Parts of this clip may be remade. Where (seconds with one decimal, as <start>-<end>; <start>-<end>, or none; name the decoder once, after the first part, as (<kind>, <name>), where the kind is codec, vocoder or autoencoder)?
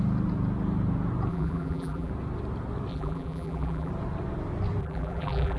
1.3-2.1 (vocoder, BigVGAN v2); 2.9-3.9; 4.8-5.6